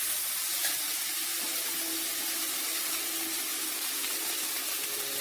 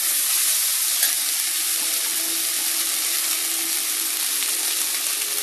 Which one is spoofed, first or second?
first